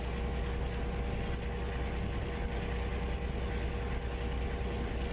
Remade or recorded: recorded